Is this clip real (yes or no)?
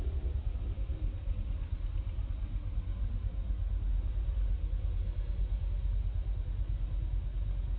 yes